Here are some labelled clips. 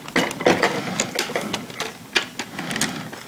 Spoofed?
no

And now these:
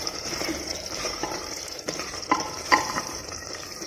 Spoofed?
yes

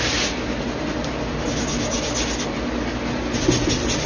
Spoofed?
no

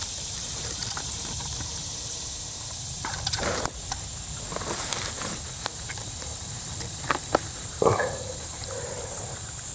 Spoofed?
yes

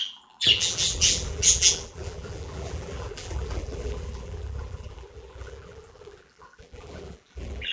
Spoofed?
yes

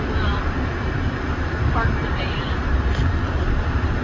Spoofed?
no